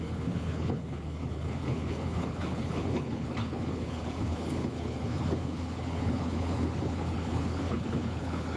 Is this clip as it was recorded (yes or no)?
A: no